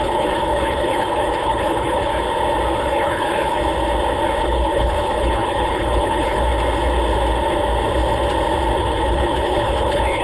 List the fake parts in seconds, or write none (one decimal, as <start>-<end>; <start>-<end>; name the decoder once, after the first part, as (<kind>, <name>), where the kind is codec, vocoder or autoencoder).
0.0-2.1 (codec, HILCodec); 2.8-3.6; 4.4-6.5; 8.8-10.2